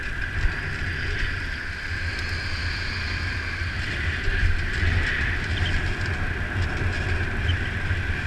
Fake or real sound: real